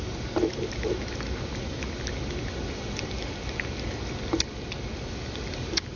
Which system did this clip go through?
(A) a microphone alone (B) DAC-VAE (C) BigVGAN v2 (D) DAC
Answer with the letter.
A